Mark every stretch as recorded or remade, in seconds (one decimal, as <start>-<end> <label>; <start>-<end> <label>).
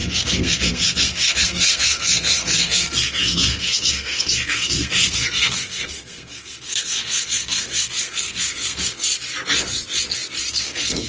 0.0-9.1 remade; 9.1-10.5 recorded; 10.5-11.1 remade